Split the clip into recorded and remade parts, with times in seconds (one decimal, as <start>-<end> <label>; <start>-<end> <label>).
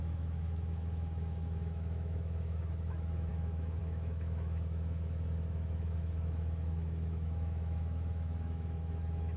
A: 0.0-9.4 remade